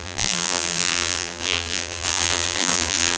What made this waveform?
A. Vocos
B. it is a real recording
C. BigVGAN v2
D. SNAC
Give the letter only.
C